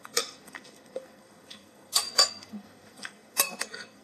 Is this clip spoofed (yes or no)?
yes